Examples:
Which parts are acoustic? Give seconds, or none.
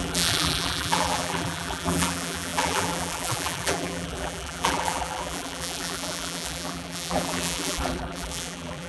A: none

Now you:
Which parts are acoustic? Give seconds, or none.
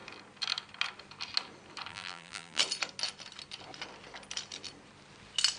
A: 0.0-1.9; 2.6-5.6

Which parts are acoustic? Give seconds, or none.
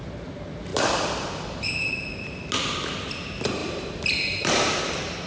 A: 0.0-0.7; 1.9-3.6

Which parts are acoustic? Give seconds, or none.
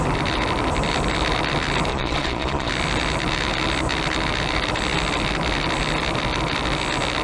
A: 0.0-1.9; 2.7-7.2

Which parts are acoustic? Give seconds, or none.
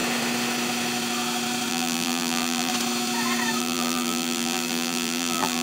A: 0.0-1.7; 2.7-3.6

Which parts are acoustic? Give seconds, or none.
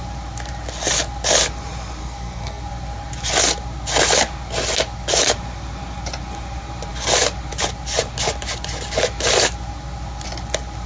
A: 0.0-2.0; 2.6-10.9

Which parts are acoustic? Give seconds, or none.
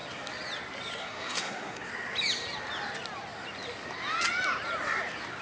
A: 0.0-1.0; 1.9-5.4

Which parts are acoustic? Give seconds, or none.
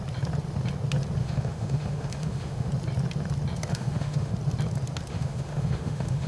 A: 0.0-1.2; 2.7-3.7; 4.3-5.1